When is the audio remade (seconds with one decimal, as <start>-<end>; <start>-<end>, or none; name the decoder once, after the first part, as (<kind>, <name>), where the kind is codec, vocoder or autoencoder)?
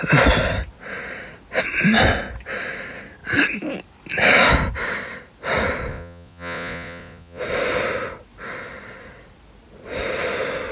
5.9-7.4 (vocoder, Vocos)